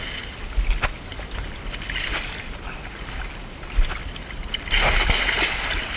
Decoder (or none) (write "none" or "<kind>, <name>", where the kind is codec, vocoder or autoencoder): none